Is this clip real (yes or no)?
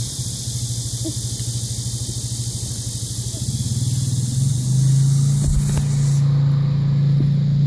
yes